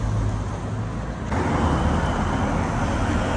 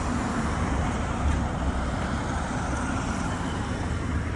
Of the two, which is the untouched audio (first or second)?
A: first